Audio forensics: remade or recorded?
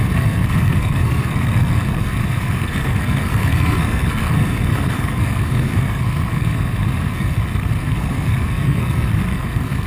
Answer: remade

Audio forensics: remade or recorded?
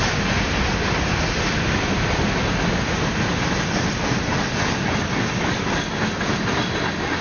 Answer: recorded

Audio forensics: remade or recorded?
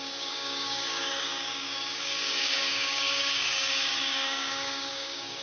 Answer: remade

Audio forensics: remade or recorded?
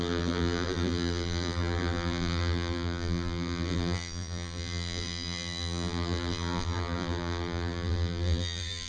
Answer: remade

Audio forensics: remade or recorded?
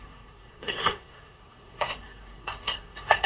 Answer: remade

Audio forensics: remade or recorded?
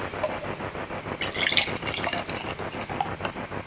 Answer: recorded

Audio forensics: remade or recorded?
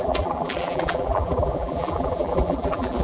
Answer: remade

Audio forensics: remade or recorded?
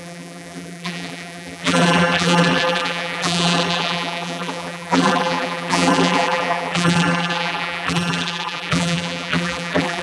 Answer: remade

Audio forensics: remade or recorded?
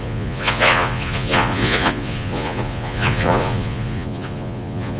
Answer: remade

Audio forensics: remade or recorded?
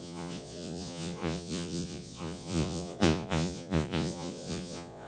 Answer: remade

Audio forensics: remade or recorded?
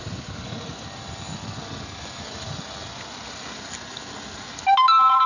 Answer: recorded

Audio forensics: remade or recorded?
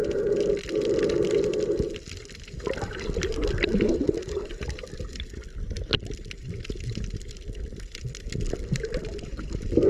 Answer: recorded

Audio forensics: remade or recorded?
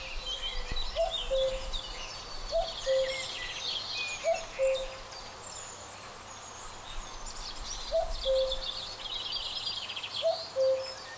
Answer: recorded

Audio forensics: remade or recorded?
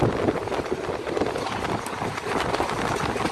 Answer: recorded